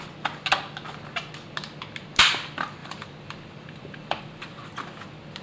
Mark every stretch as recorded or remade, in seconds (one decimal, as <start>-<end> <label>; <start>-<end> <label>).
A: 0.0-2.8 recorded; 2.8-4.7 remade; 4.7-5.4 recorded